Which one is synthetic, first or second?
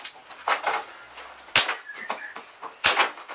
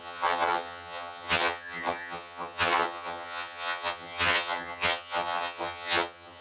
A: second